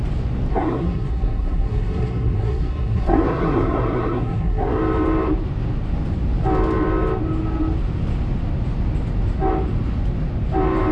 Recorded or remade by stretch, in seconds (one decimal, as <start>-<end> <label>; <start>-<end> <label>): 0.0-0.5 recorded; 0.5-4.8 remade; 4.8-10.9 recorded

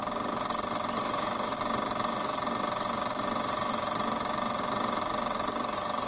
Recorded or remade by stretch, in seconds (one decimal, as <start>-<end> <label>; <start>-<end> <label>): 0.0-6.1 recorded

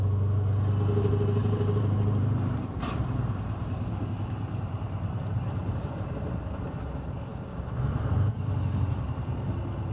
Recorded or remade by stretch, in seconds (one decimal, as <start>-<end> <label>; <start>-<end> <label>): 0.0-1.4 recorded; 1.4-6.4 remade; 6.4-9.9 recorded

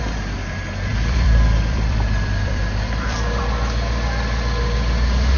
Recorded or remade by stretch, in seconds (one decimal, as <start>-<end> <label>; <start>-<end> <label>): 0.0-0.9 recorded; 0.9-3.4 remade; 3.4-5.4 recorded

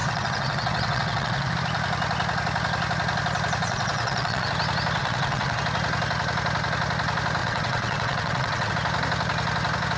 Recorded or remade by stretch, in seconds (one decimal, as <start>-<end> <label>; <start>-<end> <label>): 0.0-1.5 remade; 1.5-3.6 recorded; 3.6-4.5 remade; 4.5-5.0 recorded; 5.0-5.6 remade; 5.6-7.4 recorded; 7.4-8.7 remade; 8.7-10.0 recorded

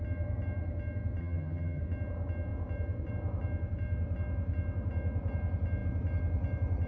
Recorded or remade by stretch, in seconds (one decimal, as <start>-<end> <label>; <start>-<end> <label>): 0.0-1.2 recorded; 1.2-1.8 remade; 1.8-6.9 recorded

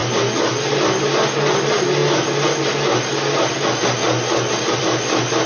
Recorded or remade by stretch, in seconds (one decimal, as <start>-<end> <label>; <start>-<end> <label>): 0.0-5.5 recorded